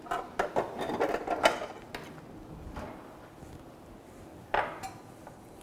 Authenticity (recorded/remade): recorded